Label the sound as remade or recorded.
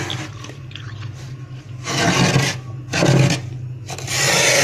recorded